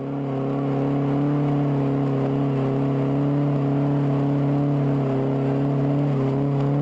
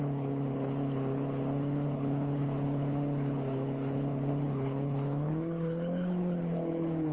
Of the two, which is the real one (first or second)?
first